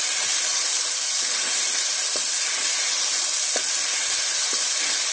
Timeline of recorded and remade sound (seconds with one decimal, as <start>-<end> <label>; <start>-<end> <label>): 0.0-5.1 recorded